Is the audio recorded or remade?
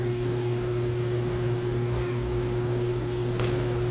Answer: remade